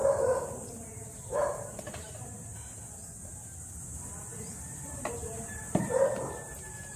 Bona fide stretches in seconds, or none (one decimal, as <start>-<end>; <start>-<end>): 2.2-4.3; 5.1-5.5